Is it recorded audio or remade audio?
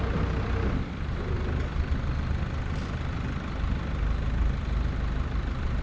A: remade